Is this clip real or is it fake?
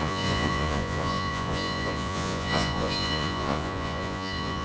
fake